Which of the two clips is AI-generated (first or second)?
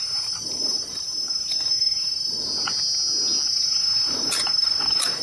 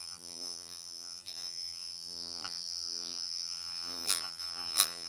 second